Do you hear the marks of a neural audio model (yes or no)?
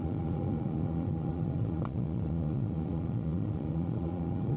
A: yes